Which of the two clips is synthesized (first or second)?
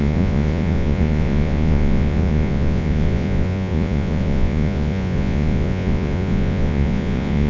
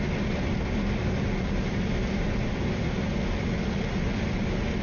first